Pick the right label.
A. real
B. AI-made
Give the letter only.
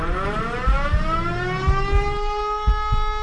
A